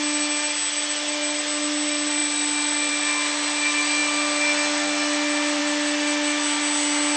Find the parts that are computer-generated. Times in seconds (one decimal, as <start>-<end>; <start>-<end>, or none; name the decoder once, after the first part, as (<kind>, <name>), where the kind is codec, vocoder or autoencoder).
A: none